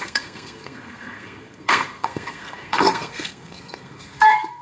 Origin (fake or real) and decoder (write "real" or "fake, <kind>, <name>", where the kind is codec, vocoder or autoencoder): fake, codec, SNAC